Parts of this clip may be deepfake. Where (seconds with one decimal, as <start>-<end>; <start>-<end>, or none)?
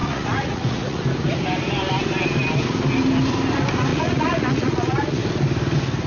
0.0-1.0; 3.9-5.2